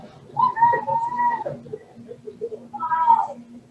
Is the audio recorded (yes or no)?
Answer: no